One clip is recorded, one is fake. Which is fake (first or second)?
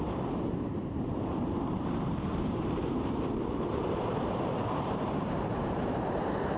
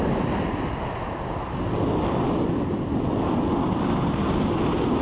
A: first